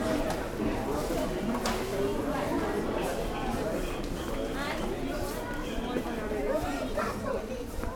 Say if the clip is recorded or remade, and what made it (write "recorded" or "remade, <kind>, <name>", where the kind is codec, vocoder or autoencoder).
remade, vocoder, BigVGAN v2